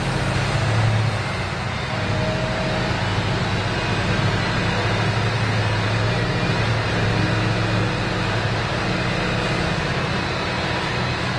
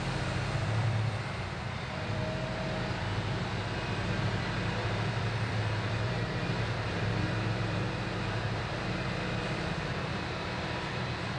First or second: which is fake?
second